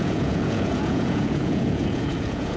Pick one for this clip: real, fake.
fake